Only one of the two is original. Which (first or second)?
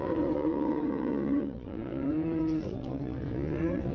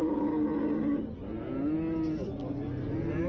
second